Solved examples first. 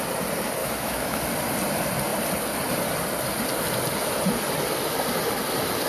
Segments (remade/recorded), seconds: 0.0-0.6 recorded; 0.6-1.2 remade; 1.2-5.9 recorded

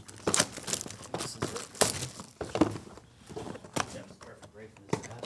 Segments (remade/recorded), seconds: 0.0-5.2 recorded

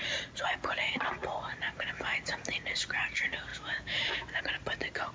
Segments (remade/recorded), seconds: 0.0-3.5 recorded; 3.5-4.4 remade; 4.4-5.1 recorded

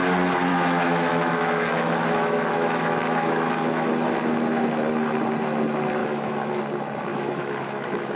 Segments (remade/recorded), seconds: 0.0-0.5 recorded; 0.5-3.9 remade; 3.9-6.0 recorded; 6.0-6.6 remade; 6.6-7.1 recorded; 7.1-8.2 remade

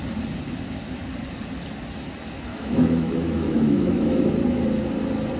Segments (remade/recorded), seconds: 0.0-2.5 recorded; 2.5-4.3 remade; 4.3-5.4 recorded

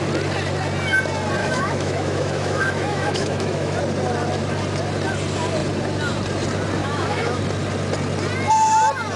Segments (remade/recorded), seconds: 0.0-1.4 recorded; 1.4-3.8 remade; 3.8-6.8 recorded; 6.8-7.4 remade; 7.4-9.2 recorded

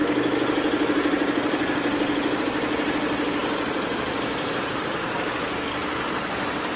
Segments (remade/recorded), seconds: 0.0-6.8 recorded